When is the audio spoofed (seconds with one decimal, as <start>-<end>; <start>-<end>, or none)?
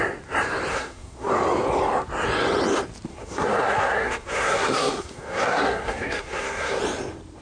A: 0.7-1.3; 3.1-6.8